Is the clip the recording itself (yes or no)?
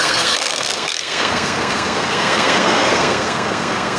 no